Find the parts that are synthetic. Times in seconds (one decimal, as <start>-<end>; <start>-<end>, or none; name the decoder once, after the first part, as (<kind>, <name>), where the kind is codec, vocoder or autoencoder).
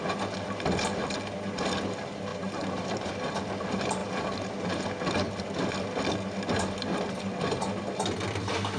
2.3-3.2 (vocoder, BigVGAN v2); 4.0-4.8